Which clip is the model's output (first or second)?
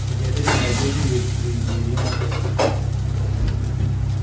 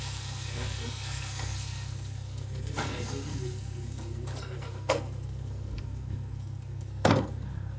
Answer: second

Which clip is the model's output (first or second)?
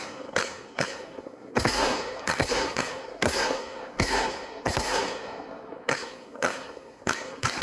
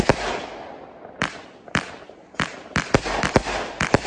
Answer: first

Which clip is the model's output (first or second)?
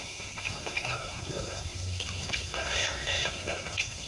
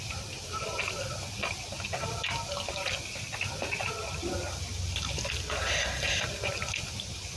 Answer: first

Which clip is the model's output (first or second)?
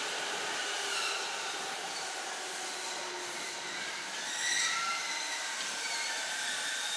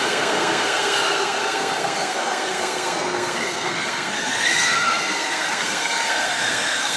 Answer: second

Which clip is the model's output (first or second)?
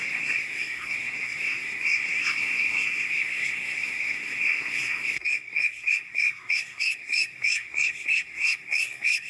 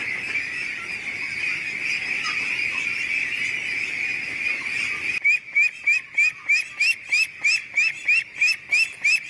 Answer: first